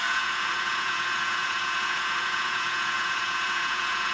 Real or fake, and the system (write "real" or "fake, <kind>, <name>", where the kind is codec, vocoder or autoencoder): fake, vocoder, Vocos